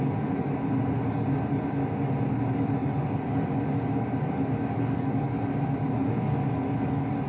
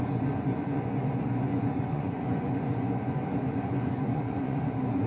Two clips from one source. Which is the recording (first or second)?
first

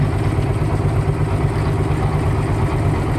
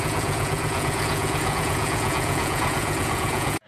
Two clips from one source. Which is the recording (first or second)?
first